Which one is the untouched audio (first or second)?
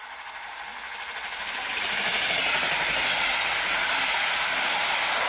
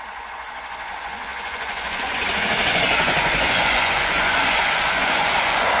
first